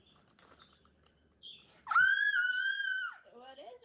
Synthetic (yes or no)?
no